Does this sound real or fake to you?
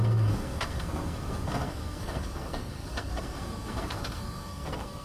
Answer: fake